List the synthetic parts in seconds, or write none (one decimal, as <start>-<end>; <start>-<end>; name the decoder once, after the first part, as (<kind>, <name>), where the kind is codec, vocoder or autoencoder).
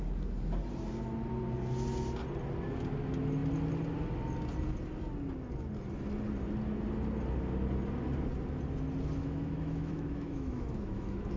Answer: 9.2-11.4 (autoencoder, DAC-VAE)